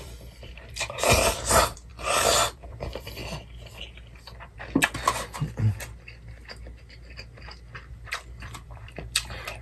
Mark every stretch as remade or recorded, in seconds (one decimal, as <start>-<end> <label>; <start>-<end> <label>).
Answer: 0.0-1.9 remade; 1.9-2.5 recorded; 2.5-3.2 remade; 3.2-7.9 recorded; 7.9-9.6 remade